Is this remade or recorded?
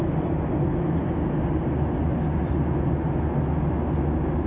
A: recorded